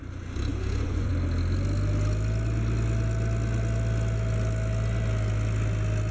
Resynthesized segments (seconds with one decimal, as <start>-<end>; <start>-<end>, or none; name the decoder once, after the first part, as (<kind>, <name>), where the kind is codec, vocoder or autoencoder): 0.5-1.1 (vocoder, Vocos)